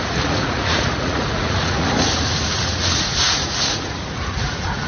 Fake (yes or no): yes